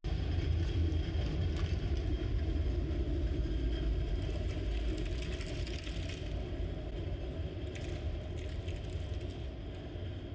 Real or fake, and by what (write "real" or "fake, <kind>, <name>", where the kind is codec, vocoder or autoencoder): real